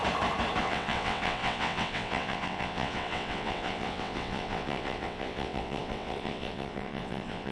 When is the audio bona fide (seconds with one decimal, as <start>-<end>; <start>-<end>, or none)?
0.0-0.6